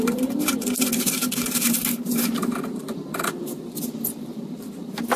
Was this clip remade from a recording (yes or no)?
yes